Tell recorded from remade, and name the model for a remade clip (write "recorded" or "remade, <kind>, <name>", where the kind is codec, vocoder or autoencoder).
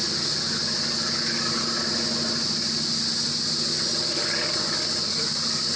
recorded